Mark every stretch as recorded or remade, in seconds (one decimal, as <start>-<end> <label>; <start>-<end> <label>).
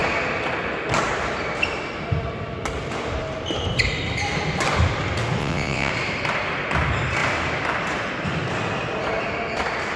0.0-5.4 recorded; 5.4-5.9 remade; 5.9-10.0 recorded